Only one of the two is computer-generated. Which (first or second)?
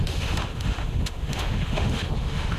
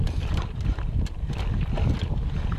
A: first